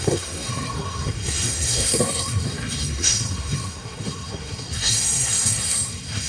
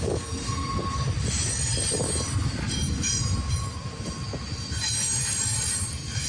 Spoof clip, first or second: first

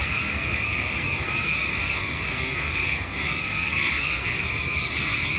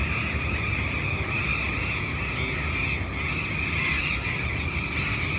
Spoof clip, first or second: first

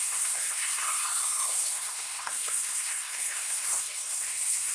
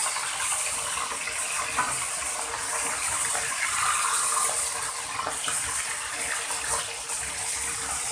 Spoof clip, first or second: first